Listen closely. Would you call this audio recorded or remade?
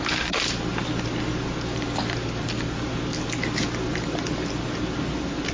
recorded